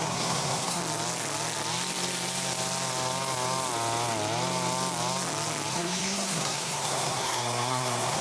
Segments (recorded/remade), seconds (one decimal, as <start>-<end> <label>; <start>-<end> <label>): 0.0-0.8 remade; 0.8-5.7 recorded; 5.7-8.2 remade